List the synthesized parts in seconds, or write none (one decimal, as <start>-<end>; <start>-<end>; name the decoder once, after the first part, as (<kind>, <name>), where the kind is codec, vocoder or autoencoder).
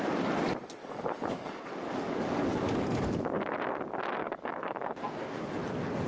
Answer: 0.8-3.5 (codec, DAC); 4.2-5.6